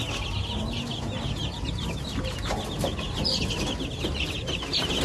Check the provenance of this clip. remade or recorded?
recorded